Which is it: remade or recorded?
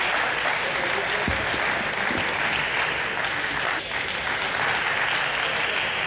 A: recorded